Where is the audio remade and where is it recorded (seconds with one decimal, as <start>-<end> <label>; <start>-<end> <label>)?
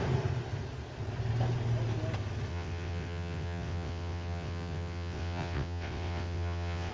0.0-2.5 recorded; 2.5-6.9 remade